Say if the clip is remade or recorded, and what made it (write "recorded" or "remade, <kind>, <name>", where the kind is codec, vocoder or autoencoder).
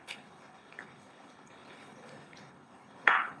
remade, codec, HILCodec